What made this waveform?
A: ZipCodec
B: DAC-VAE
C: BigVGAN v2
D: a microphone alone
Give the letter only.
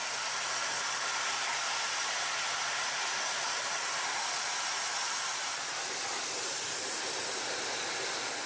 D